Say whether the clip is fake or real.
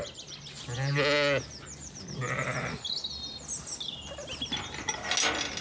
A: real